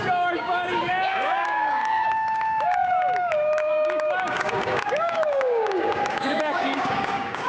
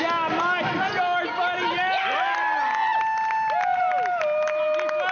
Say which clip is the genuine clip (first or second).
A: second